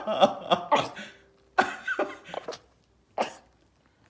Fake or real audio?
real